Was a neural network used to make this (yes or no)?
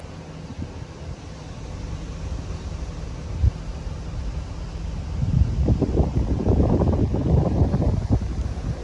no